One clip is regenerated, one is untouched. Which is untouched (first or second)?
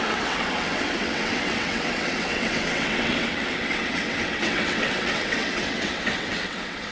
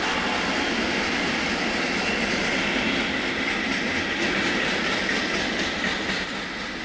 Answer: second